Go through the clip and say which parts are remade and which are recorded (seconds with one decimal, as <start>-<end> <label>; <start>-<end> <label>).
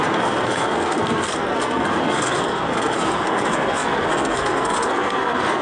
0.0-5.6 remade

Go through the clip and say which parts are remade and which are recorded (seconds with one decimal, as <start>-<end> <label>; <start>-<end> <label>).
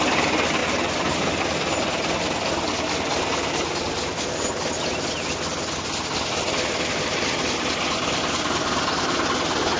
0.0-9.8 recorded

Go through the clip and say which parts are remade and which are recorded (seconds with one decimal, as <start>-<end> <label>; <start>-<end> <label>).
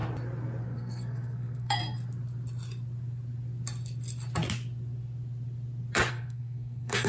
0.0-0.6 recorded; 0.6-1.8 remade; 1.8-6.1 recorded; 6.1-7.1 remade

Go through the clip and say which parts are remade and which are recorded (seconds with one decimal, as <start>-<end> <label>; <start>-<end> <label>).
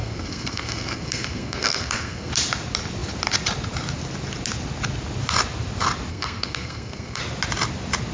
0.0-2.3 remade; 2.3-6.1 recorded; 6.1-7.2 remade; 7.2-8.1 recorded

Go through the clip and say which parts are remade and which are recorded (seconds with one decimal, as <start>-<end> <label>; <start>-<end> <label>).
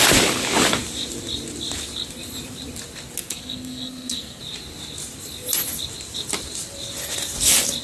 0.0-3.2 recorded; 3.2-4.4 remade; 4.4-7.8 recorded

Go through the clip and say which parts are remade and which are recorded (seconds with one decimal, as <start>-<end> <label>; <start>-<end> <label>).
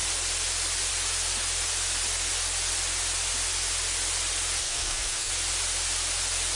0.0-4.6 recorded; 4.6-5.3 remade; 5.3-6.6 recorded